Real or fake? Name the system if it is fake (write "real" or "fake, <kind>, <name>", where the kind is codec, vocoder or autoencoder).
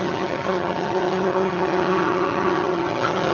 fake, vocoder, HiFi-GAN